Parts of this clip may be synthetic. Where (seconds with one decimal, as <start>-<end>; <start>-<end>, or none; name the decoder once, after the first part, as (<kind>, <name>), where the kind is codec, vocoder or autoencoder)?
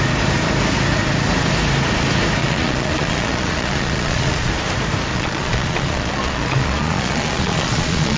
2.4-4.5 (vocoder, Vocos); 5.1-8.2